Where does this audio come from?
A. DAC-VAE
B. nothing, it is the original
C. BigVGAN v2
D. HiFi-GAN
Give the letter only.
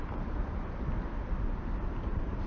C